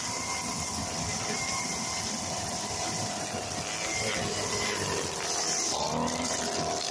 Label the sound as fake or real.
fake